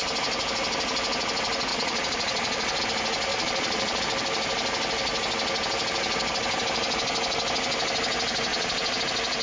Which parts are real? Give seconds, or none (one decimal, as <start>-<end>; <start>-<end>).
0.0-1.7; 2.8-3.3; 4.0-8.5; 9.0-9.4